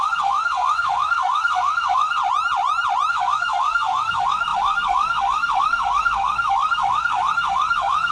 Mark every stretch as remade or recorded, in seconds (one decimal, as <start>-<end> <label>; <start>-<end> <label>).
0.0-2.2 remade; 2.2-3.1 recorded; 3.1-8.1 remade